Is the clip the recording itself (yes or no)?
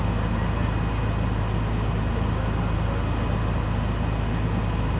yes